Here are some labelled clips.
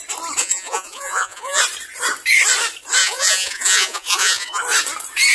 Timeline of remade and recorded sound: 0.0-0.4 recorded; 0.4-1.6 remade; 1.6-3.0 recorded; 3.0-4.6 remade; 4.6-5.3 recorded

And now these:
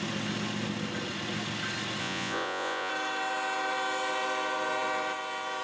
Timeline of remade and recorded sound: 0.0-2.0 recorded; 2.0-2.9 remade; 2.9-5.6 recorded

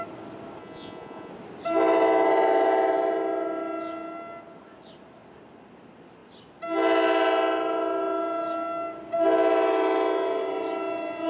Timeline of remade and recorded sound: 0.0-0.6 recorded; 0.6-1.3 remade; 1.3-11.3 recorded

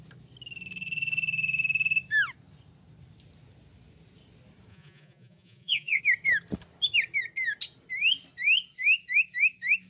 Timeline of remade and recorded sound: 0.0-4.7 recorded; 4.7-6.0 remade; 6.0-9.9 recorded

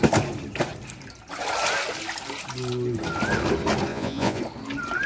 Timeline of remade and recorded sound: 0.0-3.9 recorded; 3.9-4.4 remade; 4.4-5.1 recorded

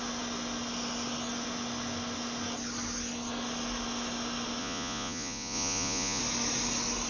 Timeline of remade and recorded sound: 0.0-4.6 recorded; 4.6-6.2 remade; 6.2-7.1 recorded